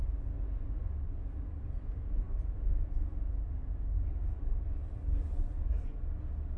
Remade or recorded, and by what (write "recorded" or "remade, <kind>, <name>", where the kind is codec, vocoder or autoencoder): recorded